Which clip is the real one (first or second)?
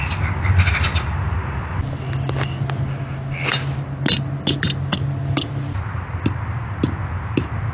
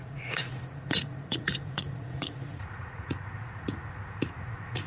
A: first